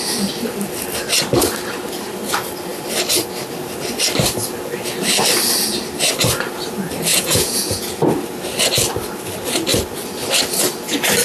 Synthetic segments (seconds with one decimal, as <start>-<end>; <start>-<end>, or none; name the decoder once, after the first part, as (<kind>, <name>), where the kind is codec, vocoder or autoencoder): 7.1-7.8 (vocoder, Vocos)